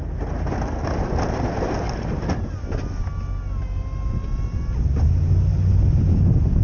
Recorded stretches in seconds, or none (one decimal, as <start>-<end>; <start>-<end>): 0.0-6.6